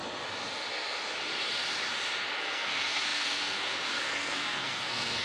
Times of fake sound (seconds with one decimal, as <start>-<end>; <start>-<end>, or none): 2.4-5.2